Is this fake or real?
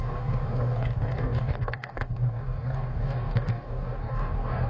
fake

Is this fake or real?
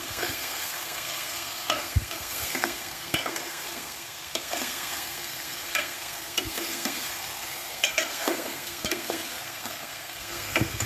fake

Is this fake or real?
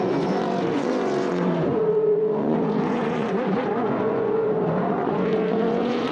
fake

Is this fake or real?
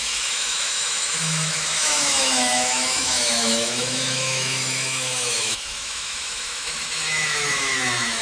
fake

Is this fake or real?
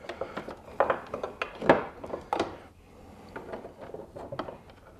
real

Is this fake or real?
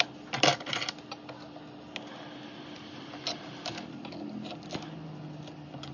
real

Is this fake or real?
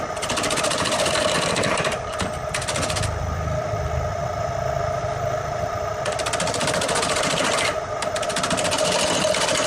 real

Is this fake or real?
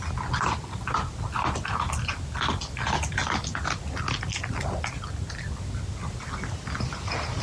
real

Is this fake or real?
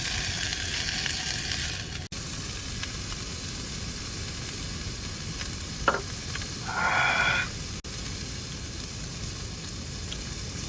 real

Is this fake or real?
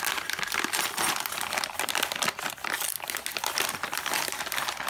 real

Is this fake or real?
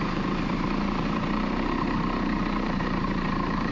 fake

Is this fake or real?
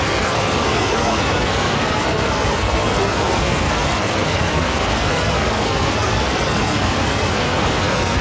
fake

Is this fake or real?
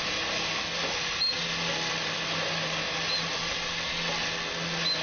real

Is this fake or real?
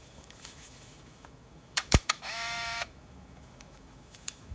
fake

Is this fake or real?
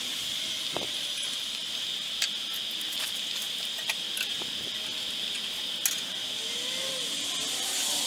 real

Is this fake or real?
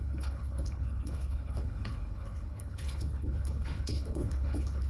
fake